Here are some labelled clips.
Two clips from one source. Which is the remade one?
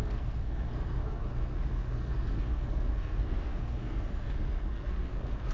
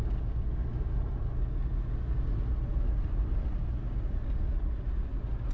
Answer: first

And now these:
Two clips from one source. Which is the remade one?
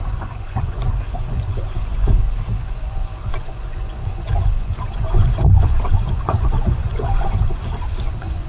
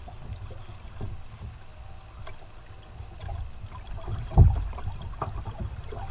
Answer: first